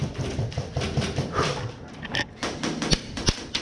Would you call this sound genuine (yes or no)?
yes